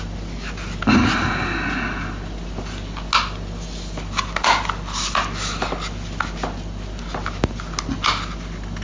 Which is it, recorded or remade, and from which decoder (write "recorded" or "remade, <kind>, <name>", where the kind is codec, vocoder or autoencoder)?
recorded